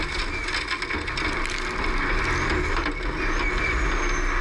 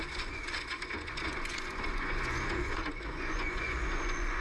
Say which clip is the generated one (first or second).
second